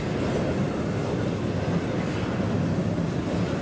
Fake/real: real